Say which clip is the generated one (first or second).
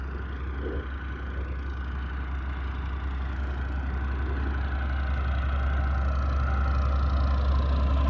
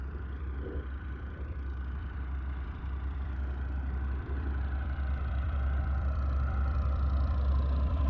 second